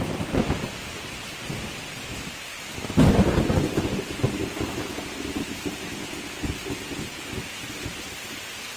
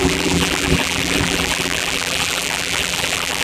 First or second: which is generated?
second